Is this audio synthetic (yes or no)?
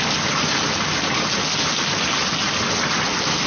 no